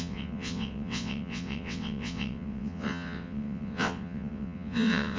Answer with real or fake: fake